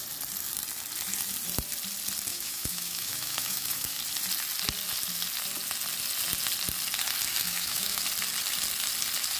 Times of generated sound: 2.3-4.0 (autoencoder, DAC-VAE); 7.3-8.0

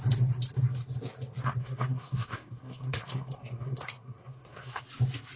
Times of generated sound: 1.6-4.8 (codec, SNAC)

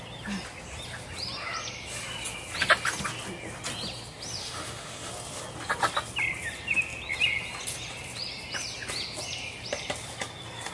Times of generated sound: 4.4-5.1 (autoencoder, DAC-VAE)

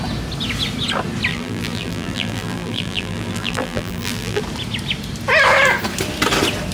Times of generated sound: 1.3-4.4 (vocoder, BigVGAN v2)